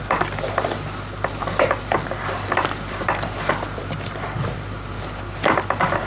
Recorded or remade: remade